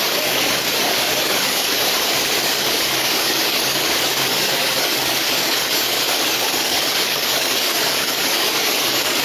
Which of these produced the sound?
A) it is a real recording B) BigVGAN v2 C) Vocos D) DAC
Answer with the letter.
D